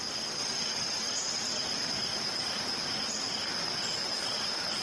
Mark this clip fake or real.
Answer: real